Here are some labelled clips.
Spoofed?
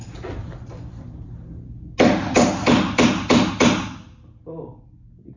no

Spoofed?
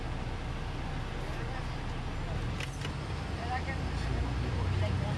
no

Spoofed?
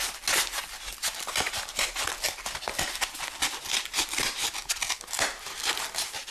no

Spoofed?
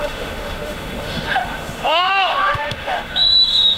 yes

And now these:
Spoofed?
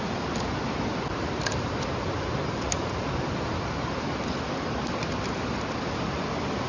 yes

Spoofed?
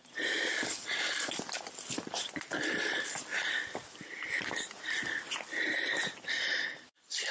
no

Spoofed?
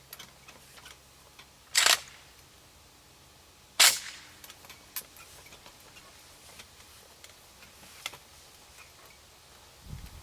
no